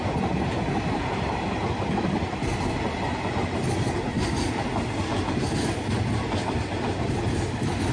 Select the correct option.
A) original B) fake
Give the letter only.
A